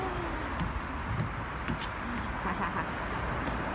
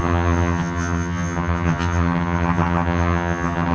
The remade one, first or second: second